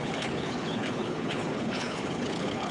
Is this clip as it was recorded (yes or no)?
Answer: no